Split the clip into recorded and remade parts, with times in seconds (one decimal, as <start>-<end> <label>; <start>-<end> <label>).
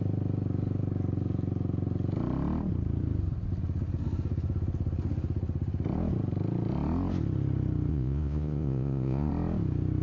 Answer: 0.0-7.9 recorded; 7.9-9.3 remade; 9.3-10.0 recorded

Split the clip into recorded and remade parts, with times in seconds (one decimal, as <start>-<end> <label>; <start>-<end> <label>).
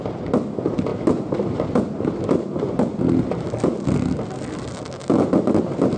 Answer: 0.0-6.0 recorded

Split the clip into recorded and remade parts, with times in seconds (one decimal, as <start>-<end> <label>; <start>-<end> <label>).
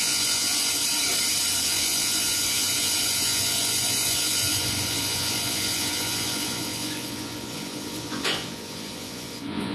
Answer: 0.0-0.8 remade; 0.8-1.6 recorded; 1.6-9.7 remade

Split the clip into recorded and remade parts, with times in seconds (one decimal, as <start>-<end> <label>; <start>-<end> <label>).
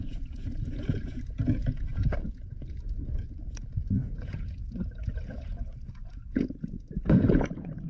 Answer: 0.0-7.9 remade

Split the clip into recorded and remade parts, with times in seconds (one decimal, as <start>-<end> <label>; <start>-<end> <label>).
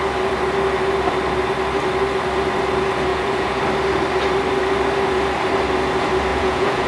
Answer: 0.0-3.1 recorded; 3.1-3.6 remade; 3.6-6.3 recorded; 6.3-6.9 remade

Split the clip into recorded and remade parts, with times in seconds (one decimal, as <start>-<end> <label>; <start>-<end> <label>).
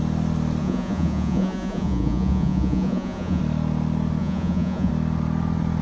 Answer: 0.0-0.6 recorded; 0.6-3.4 remade; 3.4-4.2 recorded; 4.2-4.9 remade; 4.9-5.8 recorded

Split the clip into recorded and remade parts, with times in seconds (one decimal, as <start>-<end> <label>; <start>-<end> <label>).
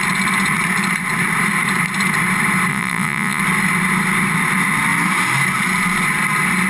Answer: 0.0-2.7 recorded; 2.7-3.4 remade; 3.4-6.7 recorded